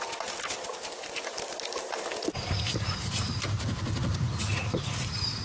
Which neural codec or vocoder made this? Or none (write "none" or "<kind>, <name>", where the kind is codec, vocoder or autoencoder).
none